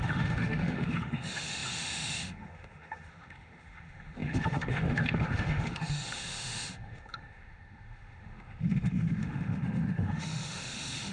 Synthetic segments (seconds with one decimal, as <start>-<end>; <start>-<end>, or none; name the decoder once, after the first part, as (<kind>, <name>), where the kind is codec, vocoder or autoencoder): 0.0-11.1 (autoencoder, DAC-VAE)